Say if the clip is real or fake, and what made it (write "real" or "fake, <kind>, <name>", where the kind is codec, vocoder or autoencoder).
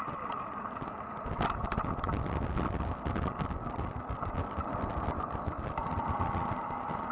real